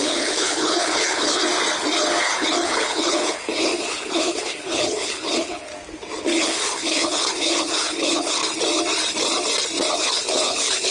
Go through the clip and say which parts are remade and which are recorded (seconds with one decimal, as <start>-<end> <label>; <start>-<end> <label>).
0.0-1.4 remade; 1.4-2.2 recorded; 2.2-5.7 remade; 5.7-6.4 recorded; 6.4-8.4 remade; 8.4-9.9 recorded; 9.9-10.9 remade